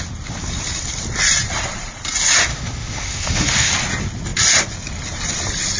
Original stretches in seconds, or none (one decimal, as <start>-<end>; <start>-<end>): 0.0-2.5; 3.7-5.8